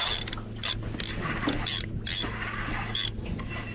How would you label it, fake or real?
real